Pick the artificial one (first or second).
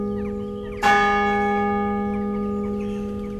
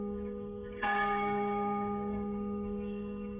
second